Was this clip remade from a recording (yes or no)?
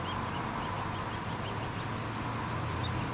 no